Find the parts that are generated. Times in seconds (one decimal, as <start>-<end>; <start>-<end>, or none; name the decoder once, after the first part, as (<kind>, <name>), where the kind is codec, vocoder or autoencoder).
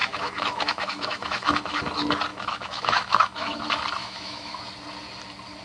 0.0-1.8 (autoencoder, DAC-VAE); 2.3-3.6; 4.0-4.6